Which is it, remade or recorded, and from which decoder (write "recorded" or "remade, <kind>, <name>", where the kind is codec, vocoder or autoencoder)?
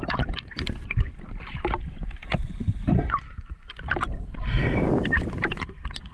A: remade, vocoder, BigVGAN v2